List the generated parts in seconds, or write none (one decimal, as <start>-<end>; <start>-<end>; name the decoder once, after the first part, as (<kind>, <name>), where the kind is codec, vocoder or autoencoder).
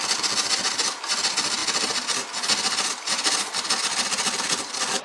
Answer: none